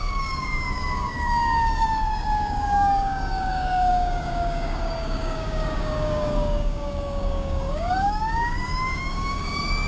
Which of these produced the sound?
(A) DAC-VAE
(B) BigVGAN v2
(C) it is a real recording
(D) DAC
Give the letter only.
D